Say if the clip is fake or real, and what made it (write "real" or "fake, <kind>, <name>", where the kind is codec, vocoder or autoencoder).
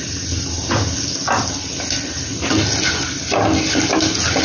real